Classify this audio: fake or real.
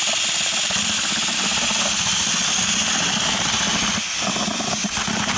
real